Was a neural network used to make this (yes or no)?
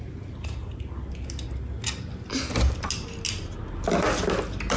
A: no